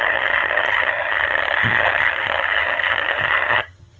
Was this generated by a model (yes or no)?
yes